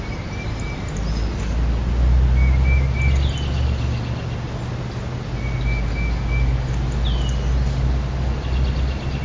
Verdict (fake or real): real